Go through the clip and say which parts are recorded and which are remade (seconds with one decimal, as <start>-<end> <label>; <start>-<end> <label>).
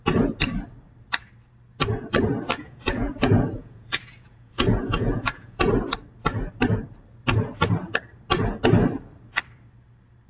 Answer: 0.0-2.5 recorded; 2.5-5.6 remade; 5.6-10.3 recorded